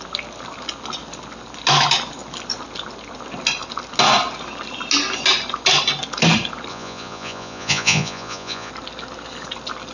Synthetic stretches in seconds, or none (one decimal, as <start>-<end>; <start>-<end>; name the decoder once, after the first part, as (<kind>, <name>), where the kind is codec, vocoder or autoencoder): 6.7-8.7 (vocoder, Vocos)